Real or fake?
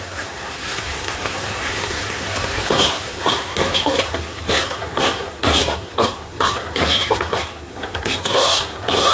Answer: fake